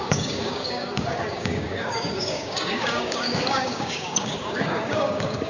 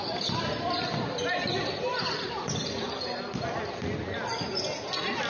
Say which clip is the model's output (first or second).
first